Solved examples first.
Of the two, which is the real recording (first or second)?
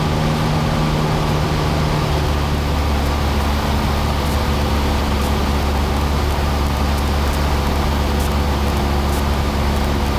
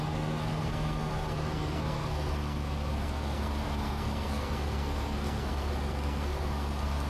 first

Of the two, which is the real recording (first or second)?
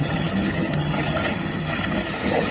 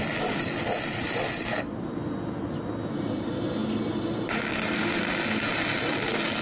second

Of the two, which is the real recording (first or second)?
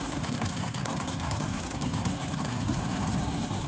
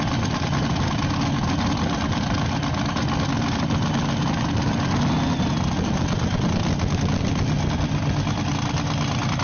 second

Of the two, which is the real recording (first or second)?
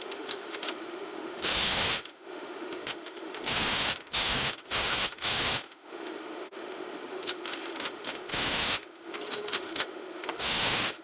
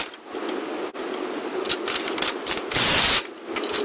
second